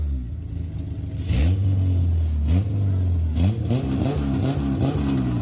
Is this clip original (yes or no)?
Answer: yes